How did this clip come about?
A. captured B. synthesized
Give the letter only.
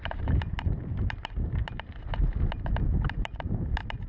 B